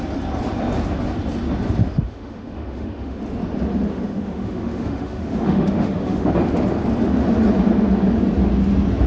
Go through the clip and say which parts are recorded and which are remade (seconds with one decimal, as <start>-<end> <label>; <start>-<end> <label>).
0.0-1.8 recorded; 1.8-3.2 remade; 3.2-3.9 recorded; 3.9-6.3 remade; 6.3-9.1 recorded